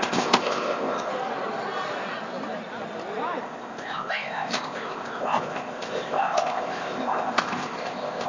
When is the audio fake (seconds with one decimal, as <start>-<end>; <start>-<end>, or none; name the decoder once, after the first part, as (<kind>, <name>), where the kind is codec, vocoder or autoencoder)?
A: 0.0-1.1 (codec, ZipCodec); 3.4-8.3